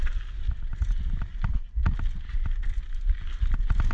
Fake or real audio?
real